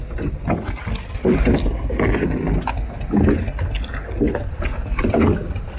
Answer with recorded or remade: recorded